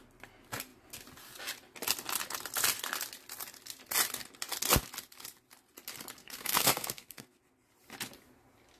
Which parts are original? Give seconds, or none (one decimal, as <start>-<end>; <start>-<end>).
0.0-6.2; 7.4-8.8